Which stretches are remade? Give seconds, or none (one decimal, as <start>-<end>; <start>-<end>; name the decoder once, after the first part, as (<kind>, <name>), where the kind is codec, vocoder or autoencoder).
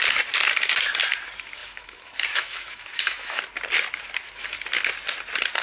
1.6-3.4 (autoencoder, DAC-VAE)